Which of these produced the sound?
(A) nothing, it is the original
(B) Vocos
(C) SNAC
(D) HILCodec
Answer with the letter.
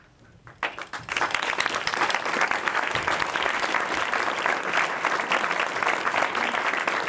A